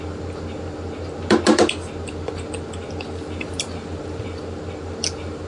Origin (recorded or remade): recorded